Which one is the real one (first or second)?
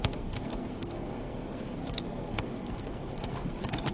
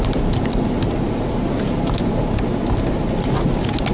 second